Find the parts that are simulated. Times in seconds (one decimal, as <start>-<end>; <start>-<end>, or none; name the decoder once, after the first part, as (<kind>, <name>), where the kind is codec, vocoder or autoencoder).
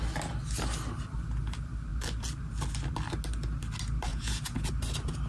4.1-4.7 (vocoder, Vocos)